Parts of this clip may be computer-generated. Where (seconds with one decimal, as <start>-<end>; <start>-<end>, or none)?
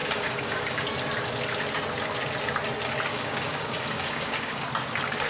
0.0-0.8; 3.1-4.6